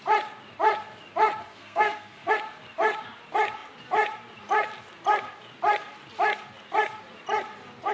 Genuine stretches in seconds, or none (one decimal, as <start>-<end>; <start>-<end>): 0.0-1.4; 2.3-7.9